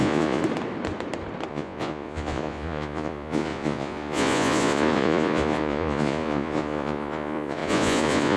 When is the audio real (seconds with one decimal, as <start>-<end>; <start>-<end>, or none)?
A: 0.4-1.5